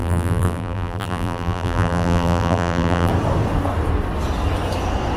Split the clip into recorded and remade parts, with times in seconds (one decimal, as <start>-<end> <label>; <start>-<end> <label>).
0.0-3.1 remade; 3.1-5.2 recorded